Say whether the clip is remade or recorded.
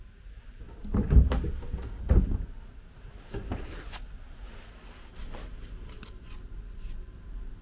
recorded